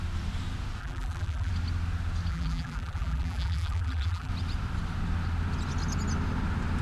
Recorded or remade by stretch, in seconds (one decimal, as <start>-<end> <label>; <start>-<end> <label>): 0.0-0.8 recorded; 0.8-1.5 remade; 1.5-2.3 recorded; 2.3-4.3 remade; 4.3-6.8 recorded